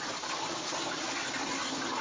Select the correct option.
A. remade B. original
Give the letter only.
B